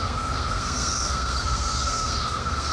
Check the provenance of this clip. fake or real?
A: fake